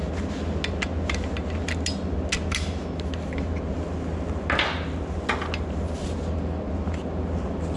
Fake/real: real